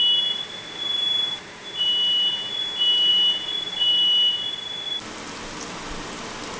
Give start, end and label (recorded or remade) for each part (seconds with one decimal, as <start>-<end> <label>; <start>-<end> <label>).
0.0-6.6 recorded